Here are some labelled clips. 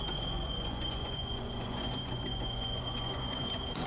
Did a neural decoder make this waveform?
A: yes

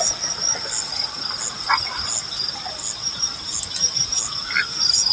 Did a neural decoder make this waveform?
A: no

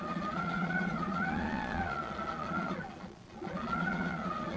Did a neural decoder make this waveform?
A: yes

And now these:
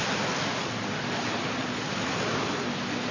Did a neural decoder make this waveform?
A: no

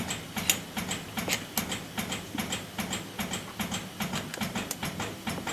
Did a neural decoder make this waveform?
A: no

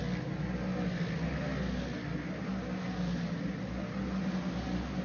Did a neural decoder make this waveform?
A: no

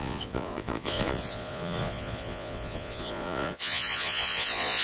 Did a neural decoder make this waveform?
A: yes